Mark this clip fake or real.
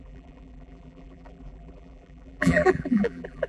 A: fake